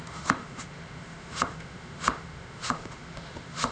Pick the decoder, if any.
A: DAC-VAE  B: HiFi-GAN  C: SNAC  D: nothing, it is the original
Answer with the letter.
A